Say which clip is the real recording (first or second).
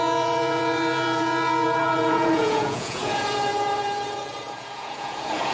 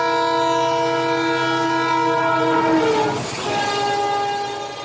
second